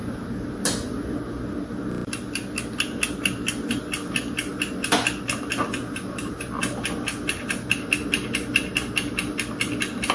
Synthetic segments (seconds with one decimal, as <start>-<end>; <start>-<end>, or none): none